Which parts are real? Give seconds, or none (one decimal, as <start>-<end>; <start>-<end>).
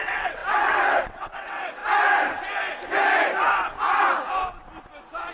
1.8-5.3